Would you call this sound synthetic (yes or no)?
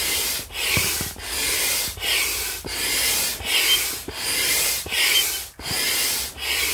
no